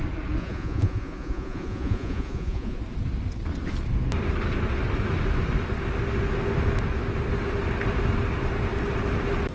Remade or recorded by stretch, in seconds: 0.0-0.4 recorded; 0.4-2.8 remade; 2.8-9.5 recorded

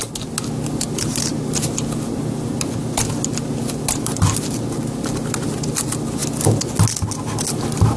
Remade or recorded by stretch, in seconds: 0.0-8.0 recorded

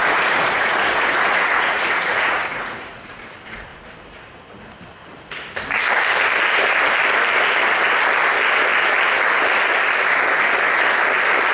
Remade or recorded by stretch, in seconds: 0.0-3.2 remade; 3.2-11.5 recorded

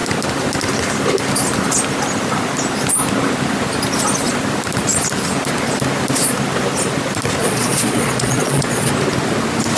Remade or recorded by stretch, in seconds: 0.0-7.4 recorded; 7.4-8.9 remade; 8.9-9.8 recorded

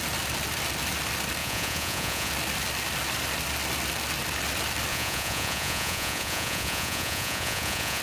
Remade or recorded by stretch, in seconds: 0.0-1.4 recorded; 1.4-2.3 remade; 2.3-4.9 recorded; 4.9-8.0 remade